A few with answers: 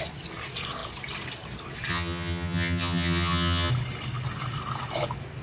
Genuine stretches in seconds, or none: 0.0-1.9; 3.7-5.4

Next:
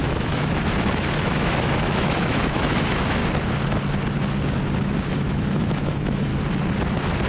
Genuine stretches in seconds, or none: 3.2-5.1; 6.3-7.3

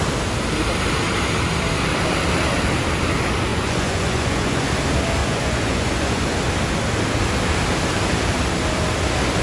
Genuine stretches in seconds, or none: 0.0-3.5; 4.7-5.2; 6.2-9.4

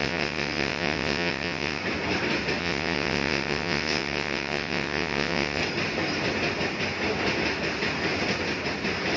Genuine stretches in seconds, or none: 1.8-2.6; 5.6-9.2